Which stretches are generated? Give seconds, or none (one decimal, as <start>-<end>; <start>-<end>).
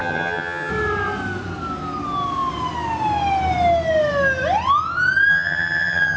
0.0-0.7; 5.3-6.2